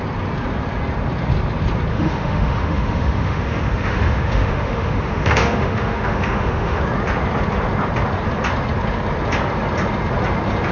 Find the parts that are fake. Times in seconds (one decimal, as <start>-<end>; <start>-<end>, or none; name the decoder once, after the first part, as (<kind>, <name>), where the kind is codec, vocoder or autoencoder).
1.9-6.8 (autoencoder, DAC-VAE)